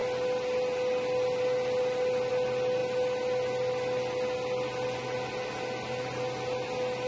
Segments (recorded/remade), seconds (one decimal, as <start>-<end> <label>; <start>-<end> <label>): 0.0-7.1 recorded